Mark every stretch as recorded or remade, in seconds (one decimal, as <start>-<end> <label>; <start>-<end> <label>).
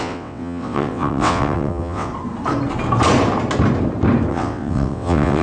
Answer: 0.0-2.1 remade; 2.1-4.3 recorded; 4.3-5.4 remade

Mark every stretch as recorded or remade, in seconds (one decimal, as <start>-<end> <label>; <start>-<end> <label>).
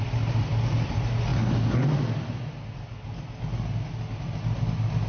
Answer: 0.0-5.1 recorded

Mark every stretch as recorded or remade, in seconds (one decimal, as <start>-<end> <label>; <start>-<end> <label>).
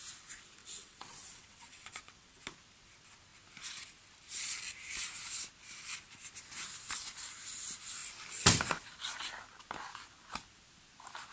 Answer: 0.0-0.6 recorded; 0.6-2.4 remade; 2.4-11.3 recorded